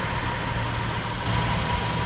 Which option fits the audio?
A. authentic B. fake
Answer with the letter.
A